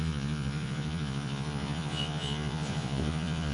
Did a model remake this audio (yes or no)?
yes